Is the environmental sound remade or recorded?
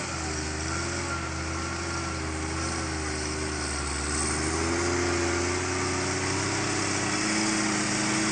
recorded